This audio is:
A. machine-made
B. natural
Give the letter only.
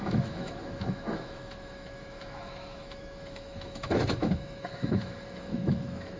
A